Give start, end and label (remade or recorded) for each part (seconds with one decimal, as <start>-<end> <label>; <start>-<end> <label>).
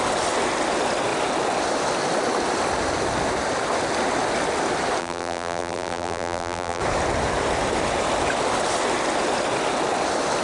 0.0-5.0 recorded; 5.0-6.8 remade; 6.8-10.4 recorded